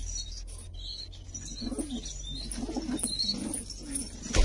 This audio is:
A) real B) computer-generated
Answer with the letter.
A